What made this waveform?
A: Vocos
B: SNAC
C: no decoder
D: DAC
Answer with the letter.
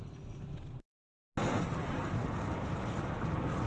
C